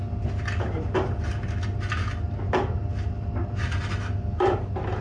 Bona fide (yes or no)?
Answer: yes